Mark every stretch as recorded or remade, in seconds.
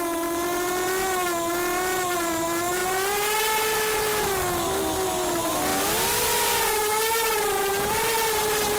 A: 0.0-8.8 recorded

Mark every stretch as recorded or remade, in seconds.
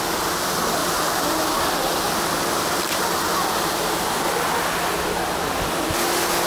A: 0.0-0.8 recorded; 0.8-4.7 remade; 4.7-6.5 recorded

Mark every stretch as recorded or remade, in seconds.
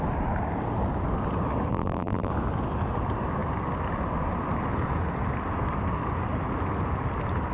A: 0.0-1.7 recorded; 1.7-2.3 remade; 2.3-7.5 recorded